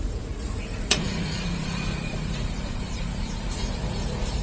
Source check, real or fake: fake